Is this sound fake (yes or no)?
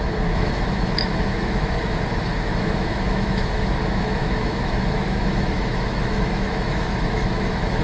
yes